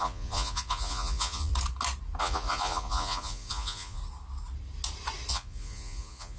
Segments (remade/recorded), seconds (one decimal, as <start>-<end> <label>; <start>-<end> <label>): 0.0-1.5 remade; 1.5-2.2 recorded; 2.2-4.0 remade; 4.0-5.3 recorded; 5.3-6.4 remade

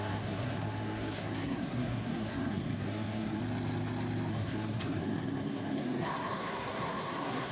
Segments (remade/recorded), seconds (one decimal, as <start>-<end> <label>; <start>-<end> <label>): 0.0-3.4 remade; 3.4-4.3 recorded; 4.3-7.5 remade